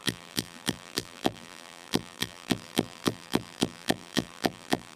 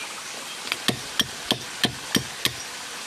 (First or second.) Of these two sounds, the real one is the second